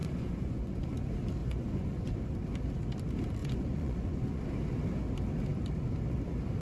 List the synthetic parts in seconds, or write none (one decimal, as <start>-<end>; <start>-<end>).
0.0-1.0; 1.4-2.1; 3.4-4.4